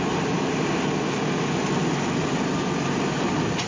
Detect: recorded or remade recorded